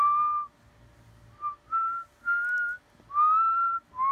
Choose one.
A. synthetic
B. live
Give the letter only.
B